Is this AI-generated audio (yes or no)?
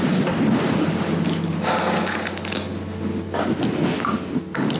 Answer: no